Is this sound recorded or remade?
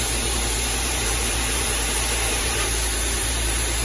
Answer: remade